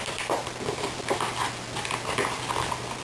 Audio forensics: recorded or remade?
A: recorded